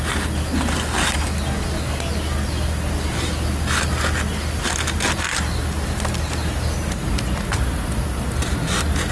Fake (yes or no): no